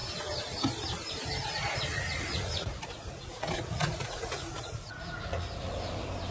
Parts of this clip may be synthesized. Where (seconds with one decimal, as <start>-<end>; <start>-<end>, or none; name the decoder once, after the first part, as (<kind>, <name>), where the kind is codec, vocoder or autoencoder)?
1.9-5.7 (vocoder, Vocos)

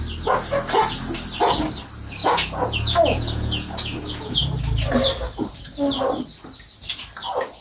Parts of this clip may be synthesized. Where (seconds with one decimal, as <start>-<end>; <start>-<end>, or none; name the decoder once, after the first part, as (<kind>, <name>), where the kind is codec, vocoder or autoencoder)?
2.2-4.6 (vocoder, Vocos)